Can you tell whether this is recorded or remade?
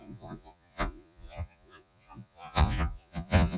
remade